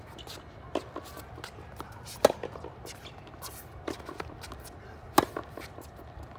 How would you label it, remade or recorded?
recorded